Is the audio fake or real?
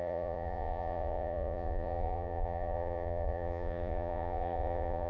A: fake